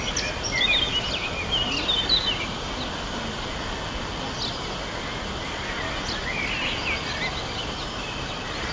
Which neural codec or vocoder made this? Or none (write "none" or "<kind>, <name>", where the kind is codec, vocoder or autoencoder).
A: none